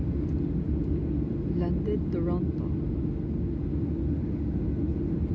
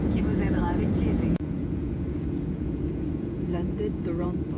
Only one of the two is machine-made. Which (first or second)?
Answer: second